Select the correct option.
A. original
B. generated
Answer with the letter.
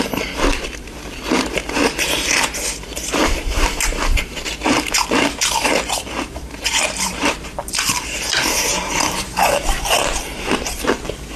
B